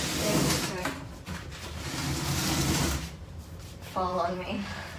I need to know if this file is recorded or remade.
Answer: remade